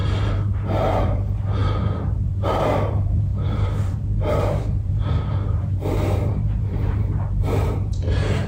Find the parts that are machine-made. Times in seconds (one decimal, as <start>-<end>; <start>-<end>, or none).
0.0-8.5